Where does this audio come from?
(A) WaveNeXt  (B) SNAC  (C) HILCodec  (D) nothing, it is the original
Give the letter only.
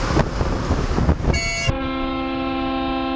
D